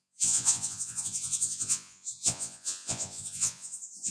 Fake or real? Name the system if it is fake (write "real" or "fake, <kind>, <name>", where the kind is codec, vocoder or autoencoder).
fake, vocoder, Vocos